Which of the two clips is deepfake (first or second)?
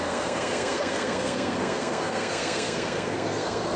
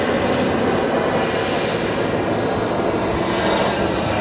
first